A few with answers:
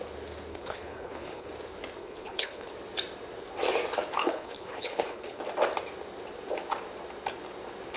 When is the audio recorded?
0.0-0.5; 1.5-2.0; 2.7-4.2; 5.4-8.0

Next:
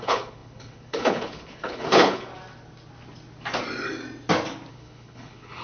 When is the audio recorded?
2.3-4.7

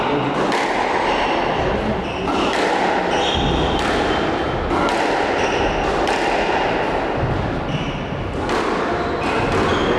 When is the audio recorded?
0.0-10.0